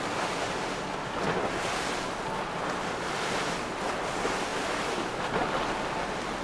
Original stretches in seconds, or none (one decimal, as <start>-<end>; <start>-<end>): 0.0-6.4